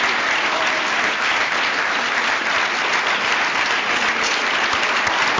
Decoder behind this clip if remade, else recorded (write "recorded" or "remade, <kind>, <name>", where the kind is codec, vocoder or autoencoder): recorded